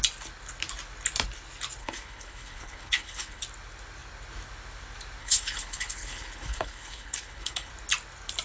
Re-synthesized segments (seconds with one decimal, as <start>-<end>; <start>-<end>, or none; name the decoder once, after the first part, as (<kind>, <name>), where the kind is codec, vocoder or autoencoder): 1.8-3.4 (codec, HILCodec); 5.2-7.7